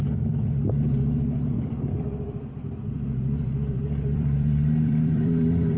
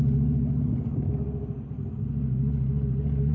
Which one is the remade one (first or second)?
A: first